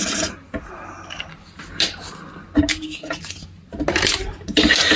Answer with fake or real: real